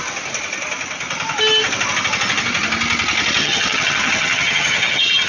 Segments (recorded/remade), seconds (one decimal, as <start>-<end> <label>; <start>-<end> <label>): 0.0-3.4 recorded; 3.4-5.3 remade